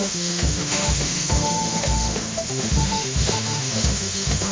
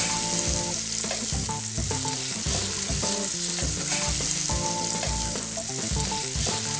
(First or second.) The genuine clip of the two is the second